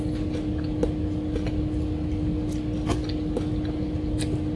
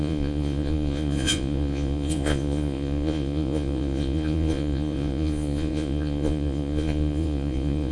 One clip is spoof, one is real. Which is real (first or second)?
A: first